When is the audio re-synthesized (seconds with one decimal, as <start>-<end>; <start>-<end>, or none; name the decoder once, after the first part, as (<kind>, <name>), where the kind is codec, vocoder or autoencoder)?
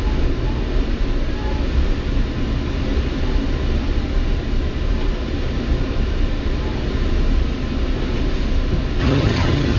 9.0-9.8 (vocoder, HiFi-GAN)